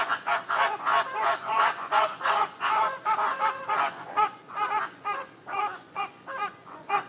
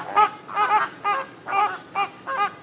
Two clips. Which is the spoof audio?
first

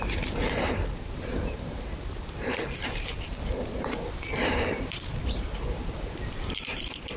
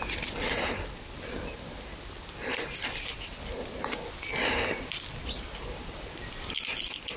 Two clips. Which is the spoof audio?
first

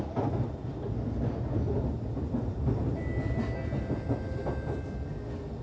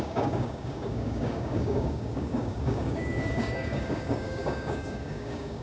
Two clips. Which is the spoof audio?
second